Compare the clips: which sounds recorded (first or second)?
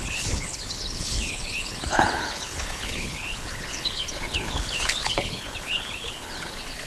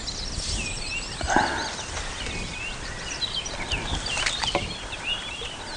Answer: second